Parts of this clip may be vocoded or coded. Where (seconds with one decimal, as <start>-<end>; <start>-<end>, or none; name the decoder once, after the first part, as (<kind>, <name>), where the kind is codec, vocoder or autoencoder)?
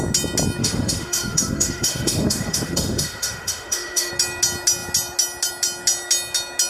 0.6-4.1 (autoencoder, DAC-VAE)